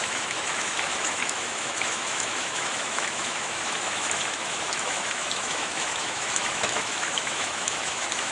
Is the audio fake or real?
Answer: fake